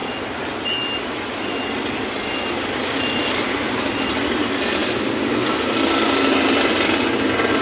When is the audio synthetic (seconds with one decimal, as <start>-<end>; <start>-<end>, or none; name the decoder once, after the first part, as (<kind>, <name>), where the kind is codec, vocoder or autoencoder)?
none